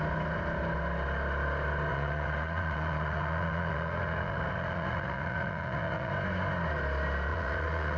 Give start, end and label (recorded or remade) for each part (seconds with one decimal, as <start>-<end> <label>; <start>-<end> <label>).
0.0-1.9 recorded; 1.9-6.1 remade; 6.1-7.3 recorded; 7.3-8.0 remade